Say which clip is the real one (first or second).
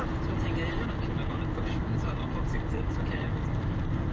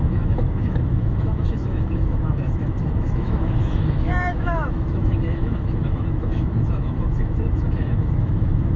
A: first